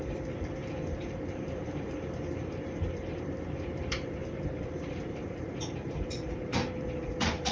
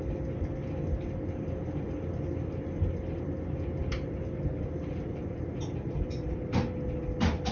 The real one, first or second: second